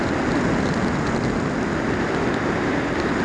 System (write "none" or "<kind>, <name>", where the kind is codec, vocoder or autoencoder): none